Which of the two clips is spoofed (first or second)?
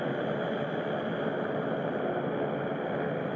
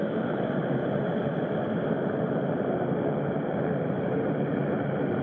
second